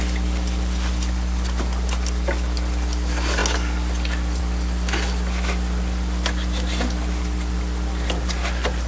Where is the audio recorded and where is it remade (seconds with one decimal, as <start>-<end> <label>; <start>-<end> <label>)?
0.0-8.9 recorded